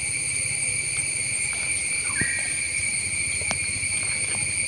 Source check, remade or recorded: recorded